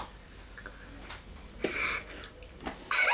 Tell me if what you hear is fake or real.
real